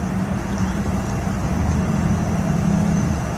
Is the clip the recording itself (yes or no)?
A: yes